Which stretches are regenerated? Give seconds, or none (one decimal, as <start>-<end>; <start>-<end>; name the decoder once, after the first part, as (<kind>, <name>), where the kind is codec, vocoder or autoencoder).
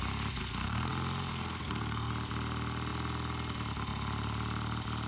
0.4-0.9 (codec, SNAC); 1.3-2.1